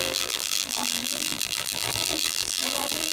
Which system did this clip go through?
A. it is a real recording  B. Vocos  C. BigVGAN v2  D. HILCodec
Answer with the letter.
C